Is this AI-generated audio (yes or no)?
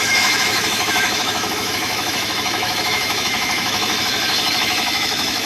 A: yes